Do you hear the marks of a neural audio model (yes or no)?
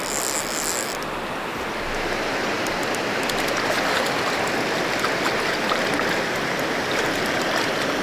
no